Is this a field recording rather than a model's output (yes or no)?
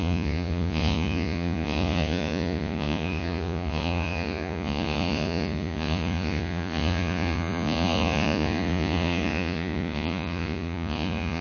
no